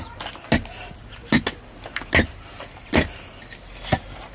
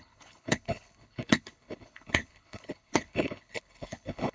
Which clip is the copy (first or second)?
second